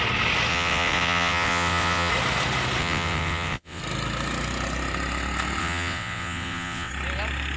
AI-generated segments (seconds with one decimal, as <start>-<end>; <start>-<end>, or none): 0.5-2.1; 2.8-3.8; 5.6-6.9

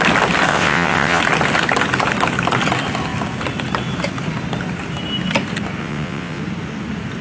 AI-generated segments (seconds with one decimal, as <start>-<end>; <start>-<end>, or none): 0.5-1.2; 5.8-6.4